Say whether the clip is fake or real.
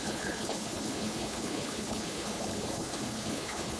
fake